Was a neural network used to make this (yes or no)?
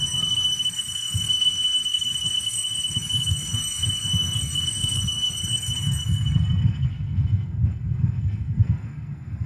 yes